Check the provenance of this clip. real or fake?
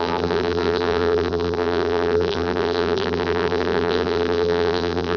fake